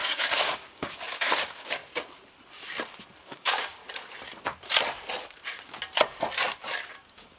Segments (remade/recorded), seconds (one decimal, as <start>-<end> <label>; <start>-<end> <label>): 0.0-1.8 remade; 1.8-3.2 recorded; 3.2-3.8 remade; 3.8-6.9 recorded; 6.9-7.4 remade